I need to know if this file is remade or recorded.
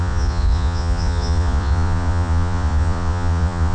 remade